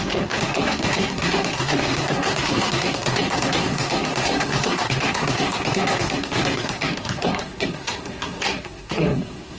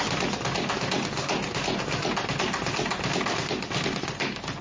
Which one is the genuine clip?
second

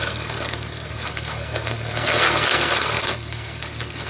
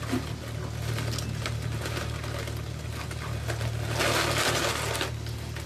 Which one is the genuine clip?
second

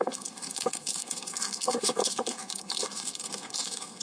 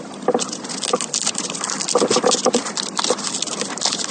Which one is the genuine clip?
second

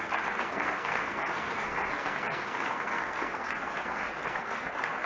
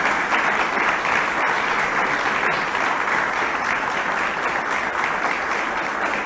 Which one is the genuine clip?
second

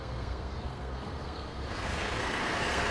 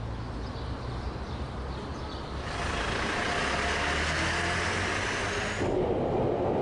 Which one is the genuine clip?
second